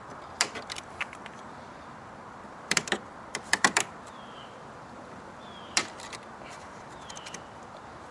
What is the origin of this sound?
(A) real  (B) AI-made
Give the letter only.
B